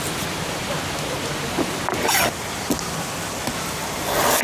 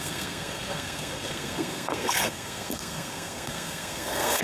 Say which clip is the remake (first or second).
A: second